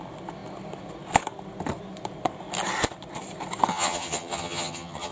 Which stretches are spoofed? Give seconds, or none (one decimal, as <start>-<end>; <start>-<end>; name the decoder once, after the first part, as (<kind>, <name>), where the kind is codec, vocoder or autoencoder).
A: 3.7-5.1 (vocoder, HiFi-GAN)